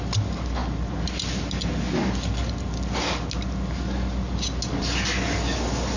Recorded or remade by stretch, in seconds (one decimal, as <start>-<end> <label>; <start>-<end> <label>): 0.0-6.0 recorded